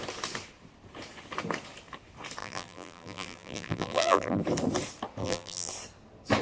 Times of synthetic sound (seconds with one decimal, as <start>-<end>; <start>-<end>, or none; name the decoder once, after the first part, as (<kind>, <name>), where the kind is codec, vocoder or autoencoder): 2.4-4.4 (vocoder, BigVGAN v2); 5.2-5.7